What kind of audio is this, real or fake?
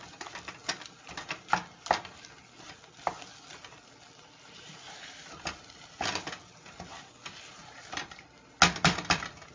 real